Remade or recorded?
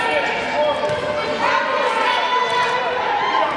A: recorded